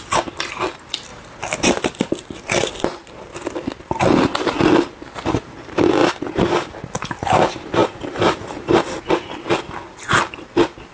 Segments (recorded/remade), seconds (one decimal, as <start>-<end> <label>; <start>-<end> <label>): 0.0-1.1 recorded; 1.1-1.7 remade; 1.7-6.0 recorded; 6.0-6.7 remade; 6.7-7.8 recorded; 7.8-9.0 remade; 9.0-10.9 recorded